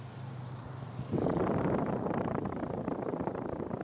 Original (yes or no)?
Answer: no